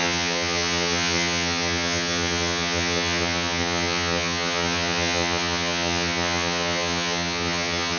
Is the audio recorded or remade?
remade